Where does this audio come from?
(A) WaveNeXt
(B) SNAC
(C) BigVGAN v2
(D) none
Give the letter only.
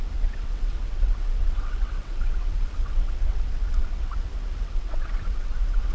A